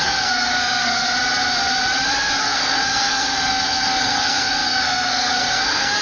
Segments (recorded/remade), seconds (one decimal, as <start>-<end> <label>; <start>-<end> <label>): 0.0-0.9 remade; 0.9-2.4 recorded; 2.4-6.0 remade